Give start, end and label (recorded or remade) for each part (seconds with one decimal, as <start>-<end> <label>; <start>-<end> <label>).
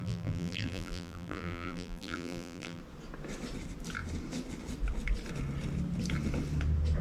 0.0-2.8 remade; 2.8-7.0 recorded